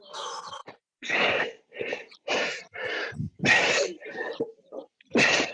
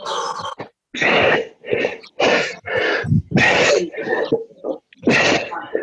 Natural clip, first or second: second